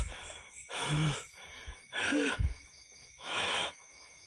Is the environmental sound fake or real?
fake